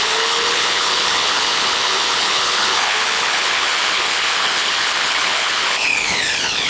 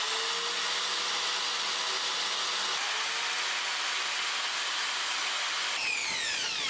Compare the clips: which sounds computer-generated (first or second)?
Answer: first